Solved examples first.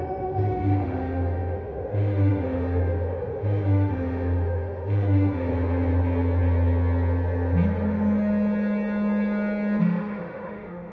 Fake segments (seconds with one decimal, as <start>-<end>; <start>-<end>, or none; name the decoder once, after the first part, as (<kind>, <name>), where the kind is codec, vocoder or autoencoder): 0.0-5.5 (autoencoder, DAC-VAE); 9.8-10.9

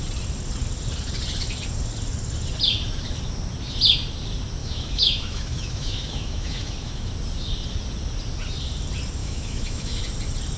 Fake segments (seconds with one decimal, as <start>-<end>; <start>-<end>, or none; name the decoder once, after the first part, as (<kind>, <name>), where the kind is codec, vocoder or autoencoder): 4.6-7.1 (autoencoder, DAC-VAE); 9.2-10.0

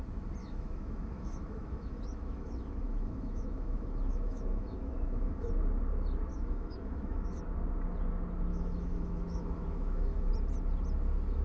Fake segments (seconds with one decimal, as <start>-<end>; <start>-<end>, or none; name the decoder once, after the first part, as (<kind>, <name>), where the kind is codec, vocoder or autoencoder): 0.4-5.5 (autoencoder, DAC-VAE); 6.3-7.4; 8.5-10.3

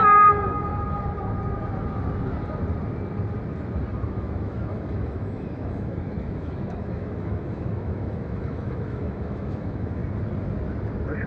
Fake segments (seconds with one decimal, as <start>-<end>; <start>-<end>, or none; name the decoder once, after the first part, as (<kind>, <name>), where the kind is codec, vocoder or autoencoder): 0.0-0.7 (autoencoder, DAC-VAE); 4.1-10.0

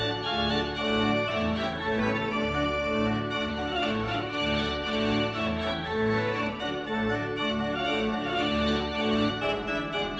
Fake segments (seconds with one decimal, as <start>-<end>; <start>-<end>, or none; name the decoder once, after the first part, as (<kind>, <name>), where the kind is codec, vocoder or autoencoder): 1.3-2.0 (autoencoder, DAC-VAE); 3.5-6.5; 8.3-9.3

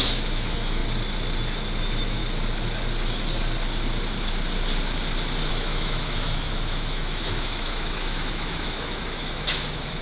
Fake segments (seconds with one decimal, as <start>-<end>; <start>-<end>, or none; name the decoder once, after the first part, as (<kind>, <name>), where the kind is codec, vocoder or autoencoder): 0.0-0.8 (autoencoder, DAC-VAE); 1.8-2.2; 5.5-10.0

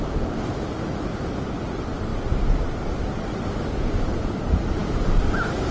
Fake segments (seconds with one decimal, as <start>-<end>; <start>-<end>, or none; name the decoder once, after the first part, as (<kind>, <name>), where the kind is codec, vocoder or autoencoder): none

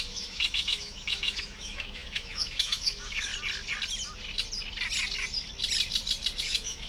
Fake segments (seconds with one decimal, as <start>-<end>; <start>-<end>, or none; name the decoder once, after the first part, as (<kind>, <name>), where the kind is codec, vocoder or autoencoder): 0.0-3.3 (autoencoder, DAC-VAE); 6.4-6.9